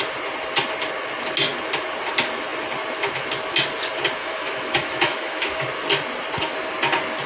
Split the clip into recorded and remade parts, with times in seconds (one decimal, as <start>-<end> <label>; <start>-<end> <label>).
0.0-4.2 recorded; 4.2-5.6 remade; 5.6-7.3 recorded